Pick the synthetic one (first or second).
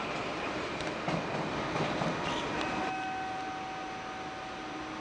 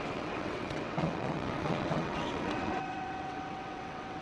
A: second